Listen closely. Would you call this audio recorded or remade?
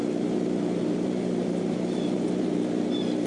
remade